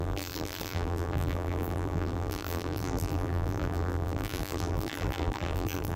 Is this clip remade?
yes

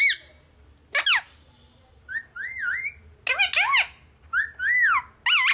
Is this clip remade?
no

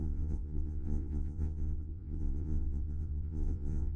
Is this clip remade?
yes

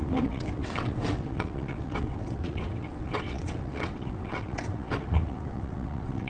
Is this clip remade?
yes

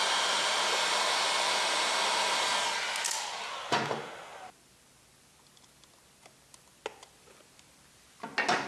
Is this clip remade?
no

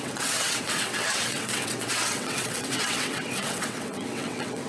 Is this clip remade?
yes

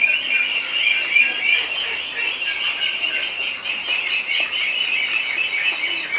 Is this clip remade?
no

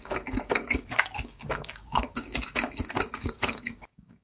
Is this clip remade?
yes